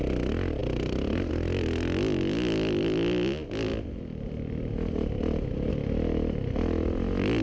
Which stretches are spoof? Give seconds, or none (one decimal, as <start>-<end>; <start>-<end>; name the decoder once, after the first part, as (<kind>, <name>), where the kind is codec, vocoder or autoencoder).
none